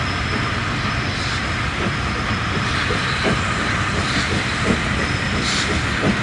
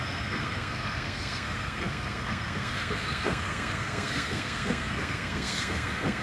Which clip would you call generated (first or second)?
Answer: second